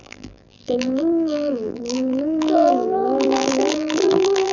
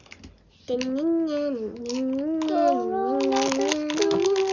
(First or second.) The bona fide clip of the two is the second